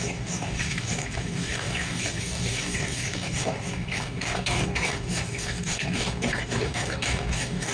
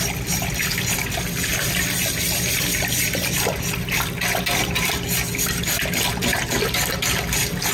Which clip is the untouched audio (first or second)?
second